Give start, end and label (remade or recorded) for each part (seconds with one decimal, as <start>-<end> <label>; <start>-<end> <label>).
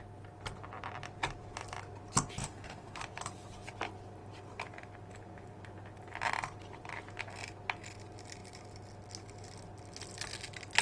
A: 0.0-2.4 recorded; 2.4-3.0 remade; 3.0-10.8 recorded